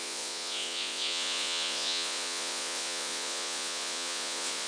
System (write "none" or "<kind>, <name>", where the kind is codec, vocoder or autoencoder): vocoder, Vocos